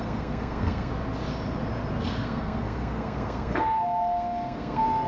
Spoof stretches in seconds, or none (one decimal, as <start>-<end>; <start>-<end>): 0.0-0.9; 2.0-5.1